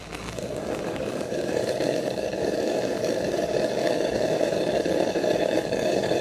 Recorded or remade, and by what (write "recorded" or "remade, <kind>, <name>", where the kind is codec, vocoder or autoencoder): remade, codec, DAC